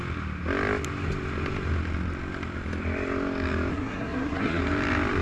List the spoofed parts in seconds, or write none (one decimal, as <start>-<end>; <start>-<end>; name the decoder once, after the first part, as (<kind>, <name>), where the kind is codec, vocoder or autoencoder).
3.7-4.6 (codec, SNAC)